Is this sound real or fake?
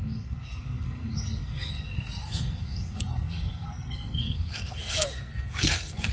fake